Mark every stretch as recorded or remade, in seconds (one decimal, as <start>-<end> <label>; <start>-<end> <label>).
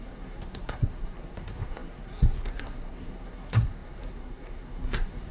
0.0-5.3 remade